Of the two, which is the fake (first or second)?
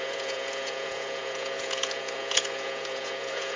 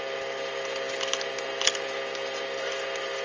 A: first